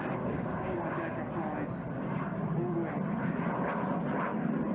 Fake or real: real